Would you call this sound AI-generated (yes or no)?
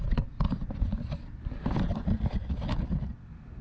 no